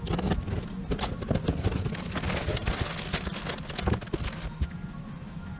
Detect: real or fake real